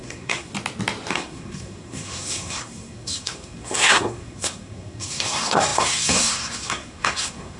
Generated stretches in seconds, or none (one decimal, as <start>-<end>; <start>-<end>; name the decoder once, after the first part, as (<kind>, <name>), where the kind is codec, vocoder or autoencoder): 0.0-0.5 (codec, SNAC); 1.1-7.6